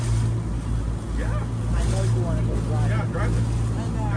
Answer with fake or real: real